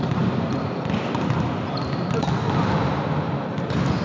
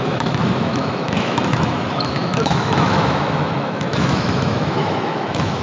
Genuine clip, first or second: first